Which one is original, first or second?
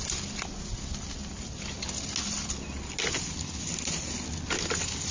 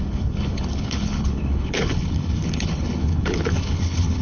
first